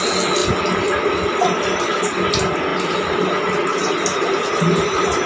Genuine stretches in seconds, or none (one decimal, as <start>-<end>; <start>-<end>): 0.0-5.3